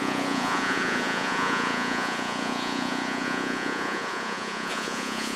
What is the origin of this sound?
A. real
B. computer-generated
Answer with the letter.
B